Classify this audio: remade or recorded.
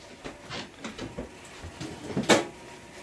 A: recorded